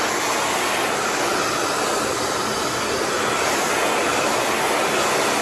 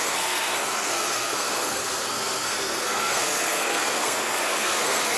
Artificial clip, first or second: second